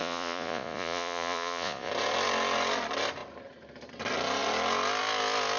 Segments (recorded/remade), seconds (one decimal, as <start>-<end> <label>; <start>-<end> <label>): 0.0-1.9 remade; 1.9-5.6 recorded